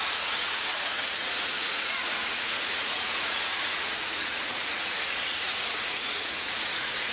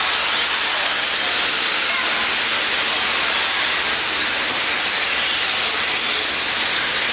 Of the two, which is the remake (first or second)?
first